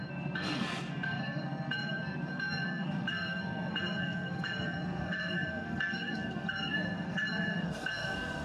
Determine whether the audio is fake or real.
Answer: fake